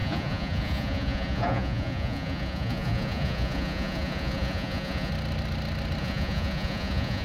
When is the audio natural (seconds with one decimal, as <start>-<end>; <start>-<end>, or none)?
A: 5.1-6.0